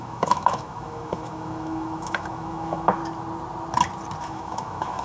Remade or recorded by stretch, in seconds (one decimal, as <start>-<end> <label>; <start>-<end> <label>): 0.0-3.0 remade; 3.0-4.2 recorded; 4.2-5.0 remade